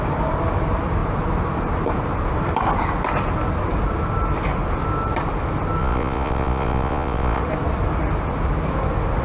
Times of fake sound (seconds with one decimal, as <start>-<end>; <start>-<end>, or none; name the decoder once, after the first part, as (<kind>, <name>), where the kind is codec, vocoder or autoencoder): 5.8-7.4 (vocoder, Vocos)